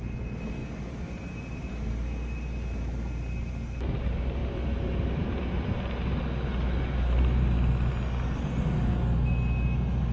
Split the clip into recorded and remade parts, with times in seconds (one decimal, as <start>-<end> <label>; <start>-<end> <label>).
0.0-0.6 recorded; 0.6-1.7 remade; 1.7-4.4 recorded; 4.4-6.2 remade; 6.2-10.1 recorded